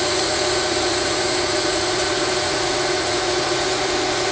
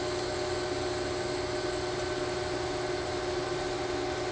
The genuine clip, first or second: second